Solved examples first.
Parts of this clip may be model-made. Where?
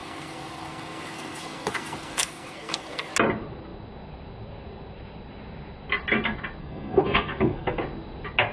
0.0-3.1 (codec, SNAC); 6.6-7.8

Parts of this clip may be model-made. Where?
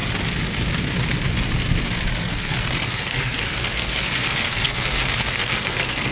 2.2-6.1 (codec, SNAC)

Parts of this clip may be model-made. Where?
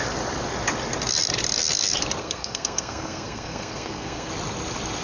2.2-4.3 (codec, SNAC)